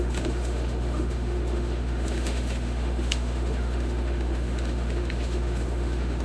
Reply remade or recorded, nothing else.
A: remade